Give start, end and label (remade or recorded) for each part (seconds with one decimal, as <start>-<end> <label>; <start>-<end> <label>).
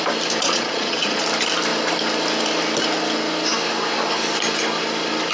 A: 0.0-0.4 recorded; 0.4-1.2 remade; 1.2-5.3 recorded